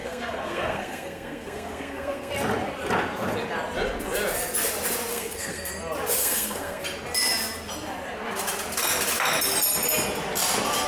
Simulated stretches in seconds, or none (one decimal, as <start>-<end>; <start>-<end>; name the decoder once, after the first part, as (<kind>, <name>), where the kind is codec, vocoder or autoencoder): 0.0-2.3 (codec, SNAC); 5.1-5.7; 6.2-6.8